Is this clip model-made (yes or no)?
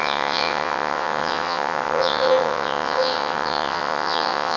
yes